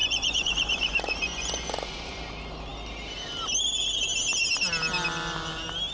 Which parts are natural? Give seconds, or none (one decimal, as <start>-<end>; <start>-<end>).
2.2-5.9